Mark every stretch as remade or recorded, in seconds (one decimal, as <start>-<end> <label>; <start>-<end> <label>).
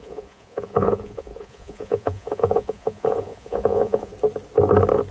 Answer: 0.0-4.1 remade; 4.1-5.1 recorded